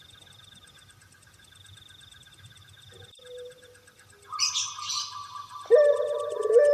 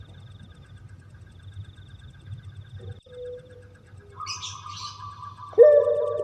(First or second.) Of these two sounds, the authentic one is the second